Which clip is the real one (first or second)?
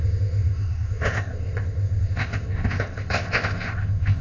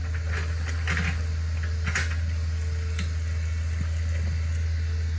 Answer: second